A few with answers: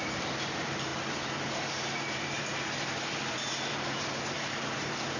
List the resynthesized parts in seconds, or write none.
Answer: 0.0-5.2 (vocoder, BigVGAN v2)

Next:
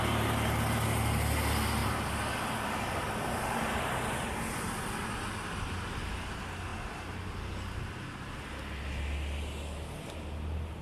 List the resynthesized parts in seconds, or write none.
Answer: 1.8-6.0 (vocoder, BigVGAN v2)

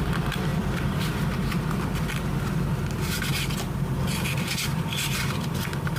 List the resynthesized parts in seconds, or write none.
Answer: 0.5-2.7 (vocoder, BigVGAN v2)